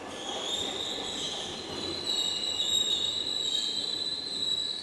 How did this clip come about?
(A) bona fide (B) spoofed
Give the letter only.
B